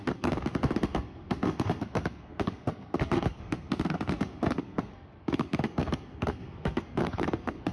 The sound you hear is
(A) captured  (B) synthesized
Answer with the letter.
B